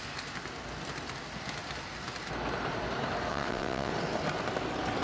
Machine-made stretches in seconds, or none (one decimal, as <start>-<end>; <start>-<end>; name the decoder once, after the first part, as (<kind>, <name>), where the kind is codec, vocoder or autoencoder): 3.3-3.9 (vocoder, WaveNeXt)